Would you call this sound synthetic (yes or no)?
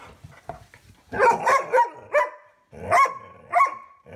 no